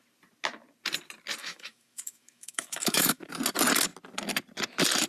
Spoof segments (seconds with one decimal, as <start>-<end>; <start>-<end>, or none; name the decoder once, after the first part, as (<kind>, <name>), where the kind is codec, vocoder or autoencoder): 1.4-3.3 (autoencoder, DAC-VAE)